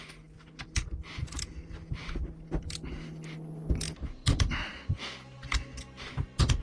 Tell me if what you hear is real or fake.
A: real